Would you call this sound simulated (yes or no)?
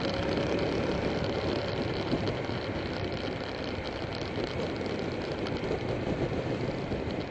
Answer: yes